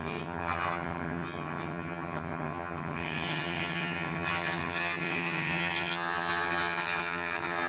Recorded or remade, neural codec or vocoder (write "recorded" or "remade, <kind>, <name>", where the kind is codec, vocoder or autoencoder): remade, vocoder, HiFi-GAN